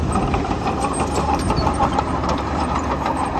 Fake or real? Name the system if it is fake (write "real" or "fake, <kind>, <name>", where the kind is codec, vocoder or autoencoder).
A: fake, vocoder, BigVGAN v2